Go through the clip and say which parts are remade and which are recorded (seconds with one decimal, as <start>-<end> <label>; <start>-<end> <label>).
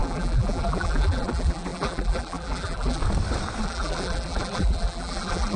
0.0-3.0 remade; 3.0-3.6 recorded; 3.6-5.6 remade